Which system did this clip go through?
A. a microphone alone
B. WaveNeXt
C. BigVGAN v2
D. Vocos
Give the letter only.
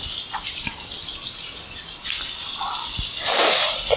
A